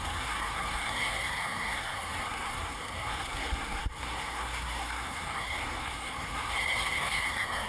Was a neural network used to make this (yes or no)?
yes